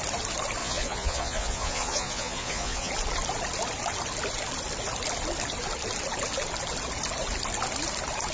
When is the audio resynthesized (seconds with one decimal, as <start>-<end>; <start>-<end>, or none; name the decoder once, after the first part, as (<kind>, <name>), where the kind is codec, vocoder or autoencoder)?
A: 0.6-2.9 (vocoder, Vocos)